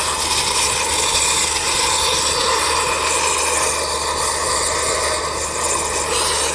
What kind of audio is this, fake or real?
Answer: real